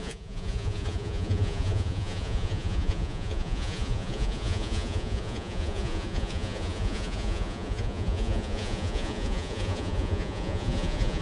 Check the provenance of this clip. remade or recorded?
remade